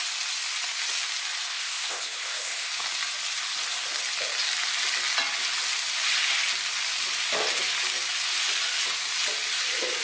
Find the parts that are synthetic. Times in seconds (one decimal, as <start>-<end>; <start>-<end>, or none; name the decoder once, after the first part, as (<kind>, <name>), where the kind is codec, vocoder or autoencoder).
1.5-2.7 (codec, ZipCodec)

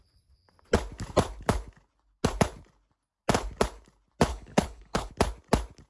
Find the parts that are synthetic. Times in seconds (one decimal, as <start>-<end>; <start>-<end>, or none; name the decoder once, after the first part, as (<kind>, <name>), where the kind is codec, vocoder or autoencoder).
4.3-5.1 (codec, HILCodec)

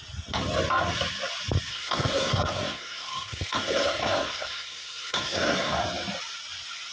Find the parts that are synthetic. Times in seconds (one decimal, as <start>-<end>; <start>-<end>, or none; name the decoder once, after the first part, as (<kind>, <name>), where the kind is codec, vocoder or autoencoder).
1.7-5.8 (codec, SNAC)